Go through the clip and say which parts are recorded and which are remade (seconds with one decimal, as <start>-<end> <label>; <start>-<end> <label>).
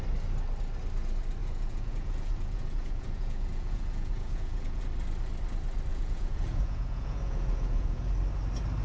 0.0-1.4 recorded; 1.4-4.8 remade; 4.8-5.9 recorded; 5.9-8.1 remade; 8.1-8.8 recorded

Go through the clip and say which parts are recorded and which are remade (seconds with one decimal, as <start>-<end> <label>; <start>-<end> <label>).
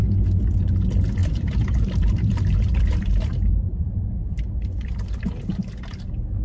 0.0-1.2 recorded; 1.2-4.1 remade; 4.1-6.4 recorded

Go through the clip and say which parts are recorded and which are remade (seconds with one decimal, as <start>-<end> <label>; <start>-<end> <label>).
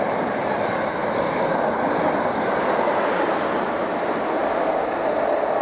0.0-1.0 recorded; 1.0-4.4 remade; 4.4-5.6 recorded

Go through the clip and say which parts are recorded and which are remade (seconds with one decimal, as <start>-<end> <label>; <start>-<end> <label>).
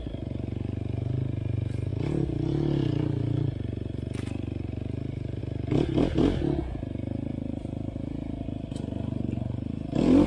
0.0-10.3 recorded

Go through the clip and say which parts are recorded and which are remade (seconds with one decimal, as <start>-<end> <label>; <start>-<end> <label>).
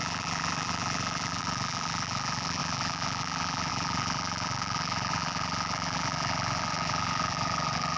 0.0-8.0 remade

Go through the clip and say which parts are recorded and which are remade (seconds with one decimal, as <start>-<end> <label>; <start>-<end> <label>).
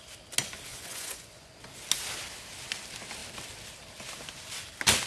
0.0-0.7 recorded; 0.7-1.6 remade; 1.6-5.1 recorded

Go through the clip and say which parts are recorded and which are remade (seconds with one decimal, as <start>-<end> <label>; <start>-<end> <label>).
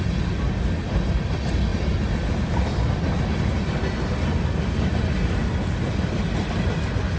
0.0-7.2 recorded